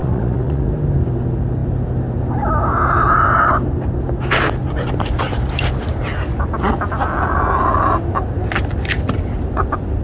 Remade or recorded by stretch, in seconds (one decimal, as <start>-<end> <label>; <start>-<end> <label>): 0.0-0.7 remade; 0.7-10.0 recorded